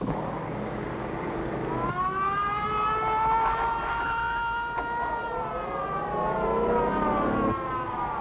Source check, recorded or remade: recorded